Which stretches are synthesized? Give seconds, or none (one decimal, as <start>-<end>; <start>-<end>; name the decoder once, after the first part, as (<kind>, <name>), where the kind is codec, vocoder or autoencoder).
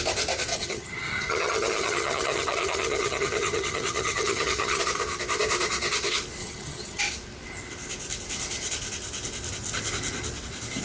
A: 0.5-4.8 (vocoder, HiFi-GAN); 6.4-7.0